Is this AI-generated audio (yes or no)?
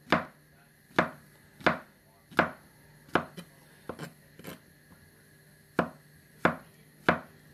no